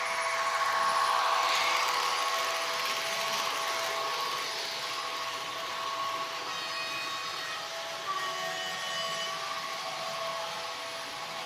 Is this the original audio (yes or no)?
yes